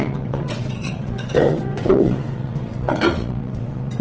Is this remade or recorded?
remade